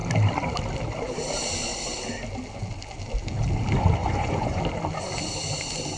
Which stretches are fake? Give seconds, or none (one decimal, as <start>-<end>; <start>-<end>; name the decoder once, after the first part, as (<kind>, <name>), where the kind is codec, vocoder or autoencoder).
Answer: 4.0-4.6 (vocoder, Vocos)